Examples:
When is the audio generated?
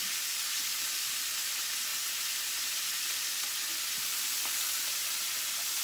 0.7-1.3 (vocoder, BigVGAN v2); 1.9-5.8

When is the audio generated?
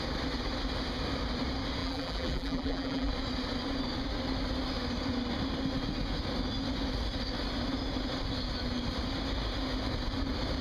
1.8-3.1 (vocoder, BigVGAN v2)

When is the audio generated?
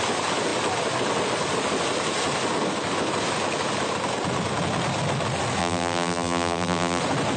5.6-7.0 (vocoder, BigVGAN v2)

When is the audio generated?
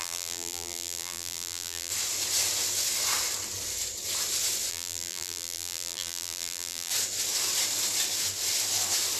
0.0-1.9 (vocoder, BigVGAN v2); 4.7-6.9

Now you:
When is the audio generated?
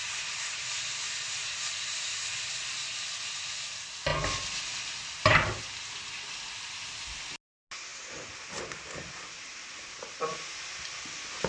0.0-0.6 (vocoder, BigVGAN v2)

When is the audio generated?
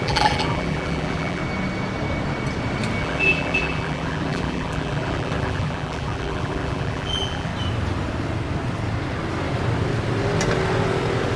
0.0-1.4 (vocoder, BigVGAN v2); 3.0-7.5